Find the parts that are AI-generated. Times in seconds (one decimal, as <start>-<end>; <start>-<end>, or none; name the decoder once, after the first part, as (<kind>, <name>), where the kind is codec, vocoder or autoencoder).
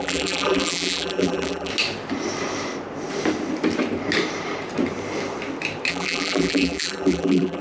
0.0-1.7 (vocoder, BigVGAN v2); 5.9-7.6